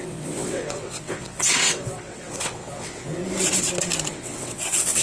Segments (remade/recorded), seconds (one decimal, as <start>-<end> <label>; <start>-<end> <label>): 0.0-3.2 remade; 3.2-4.1 recorded; 4.1-5.0 remade